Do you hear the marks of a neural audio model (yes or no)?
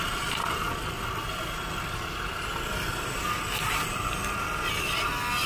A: no